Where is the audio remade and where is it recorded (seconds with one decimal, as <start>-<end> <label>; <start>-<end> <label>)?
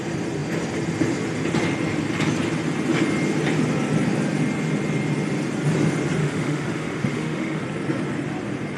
0.0-6.2 recorded; 6.2-7.6 remade; 7.6-8.8 recorded